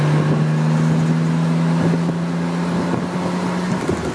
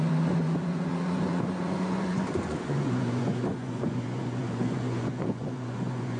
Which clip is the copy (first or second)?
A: second